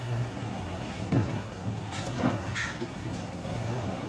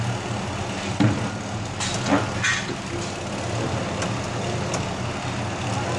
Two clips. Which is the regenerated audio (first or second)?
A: first